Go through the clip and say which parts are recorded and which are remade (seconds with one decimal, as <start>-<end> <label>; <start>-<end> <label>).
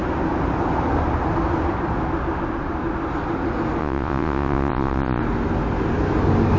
0.0-3.8 recorded; 3.8-5.2 remade; 5.2-6.6 recorded